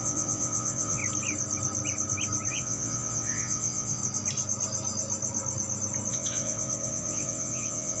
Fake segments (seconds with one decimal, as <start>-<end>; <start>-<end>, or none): 0.0-1.0; 2.5-4.0; 6.1-8.0